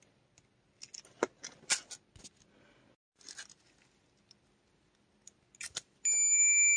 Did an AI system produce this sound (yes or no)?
no